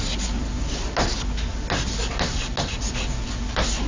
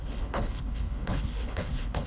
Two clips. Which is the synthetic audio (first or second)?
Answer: second